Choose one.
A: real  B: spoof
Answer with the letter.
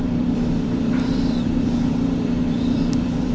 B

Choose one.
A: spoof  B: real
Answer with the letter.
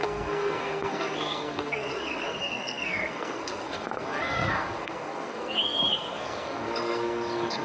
A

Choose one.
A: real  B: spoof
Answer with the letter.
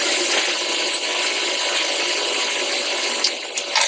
A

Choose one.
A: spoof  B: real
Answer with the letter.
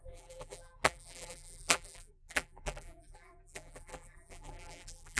A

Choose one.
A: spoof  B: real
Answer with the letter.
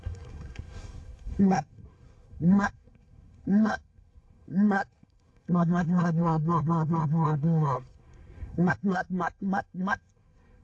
A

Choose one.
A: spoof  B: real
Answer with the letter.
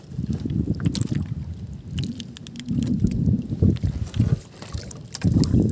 B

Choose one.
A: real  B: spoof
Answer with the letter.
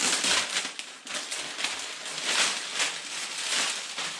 A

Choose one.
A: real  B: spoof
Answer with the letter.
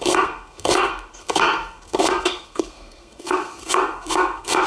B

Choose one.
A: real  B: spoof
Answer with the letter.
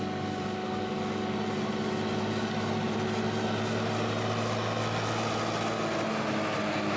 A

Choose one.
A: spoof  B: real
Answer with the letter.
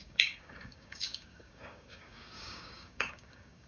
A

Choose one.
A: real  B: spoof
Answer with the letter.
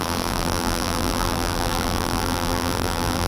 B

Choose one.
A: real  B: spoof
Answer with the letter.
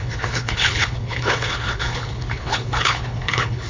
B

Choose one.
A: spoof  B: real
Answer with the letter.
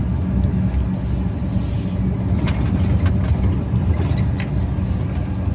B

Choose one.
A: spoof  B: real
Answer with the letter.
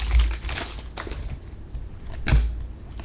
B